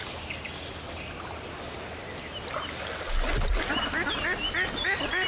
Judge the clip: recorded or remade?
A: recorded